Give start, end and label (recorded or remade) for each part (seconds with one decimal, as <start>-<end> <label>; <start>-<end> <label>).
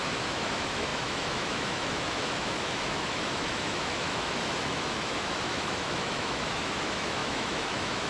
0.0-8.1 remade